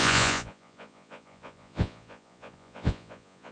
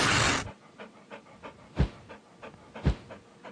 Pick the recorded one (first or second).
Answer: second